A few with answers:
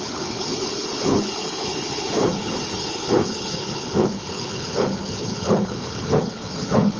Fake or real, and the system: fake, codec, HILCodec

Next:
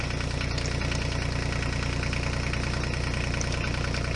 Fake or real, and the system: real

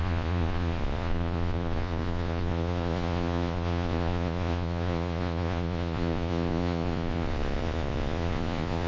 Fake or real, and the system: fake, vocoder, Vocos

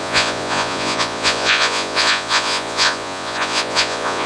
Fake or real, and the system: fake, vocoder, Vocos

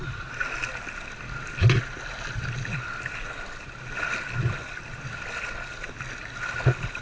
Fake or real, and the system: real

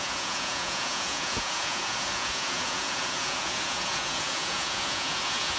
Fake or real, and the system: fake, vocoder, Vocos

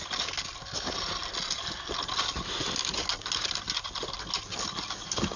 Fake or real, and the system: real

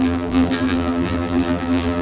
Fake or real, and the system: fake, vocoder, BigVGAN v2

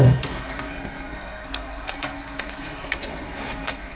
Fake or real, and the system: fake, codec, SNAC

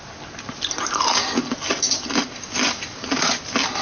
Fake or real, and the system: real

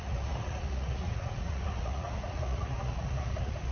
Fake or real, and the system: fake, vocoder, Vocos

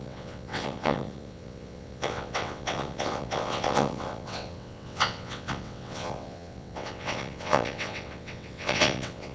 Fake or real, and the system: fake, vocoder, WaveNeXt